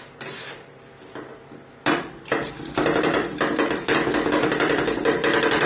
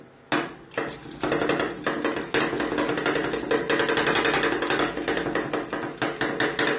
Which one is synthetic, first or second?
first